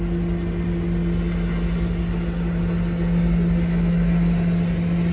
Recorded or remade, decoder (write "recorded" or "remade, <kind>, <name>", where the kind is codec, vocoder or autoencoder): recorded